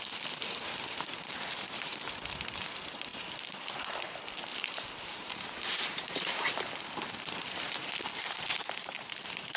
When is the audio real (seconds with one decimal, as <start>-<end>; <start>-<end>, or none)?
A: 0.0-4.5